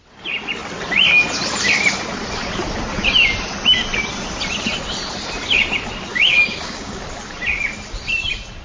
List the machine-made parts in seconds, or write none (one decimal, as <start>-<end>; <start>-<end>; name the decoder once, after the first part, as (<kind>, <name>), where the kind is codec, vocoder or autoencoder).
6.1-7.0 (codec, DAC)